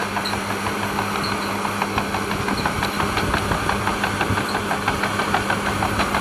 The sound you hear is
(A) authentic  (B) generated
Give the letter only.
A